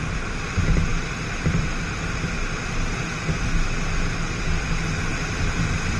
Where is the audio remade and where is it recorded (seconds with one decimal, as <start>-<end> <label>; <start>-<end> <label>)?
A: 0.0-6.0 recorded